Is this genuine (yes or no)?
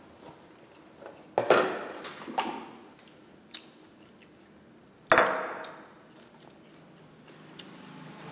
yes